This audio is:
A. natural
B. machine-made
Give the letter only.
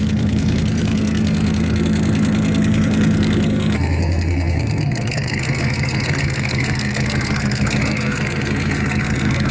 B